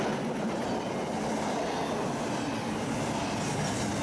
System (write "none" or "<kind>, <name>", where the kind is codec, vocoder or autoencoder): none